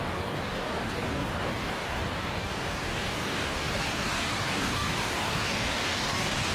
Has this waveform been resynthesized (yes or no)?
yes